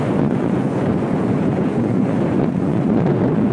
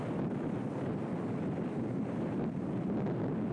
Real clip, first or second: second